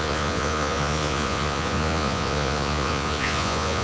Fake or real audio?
fake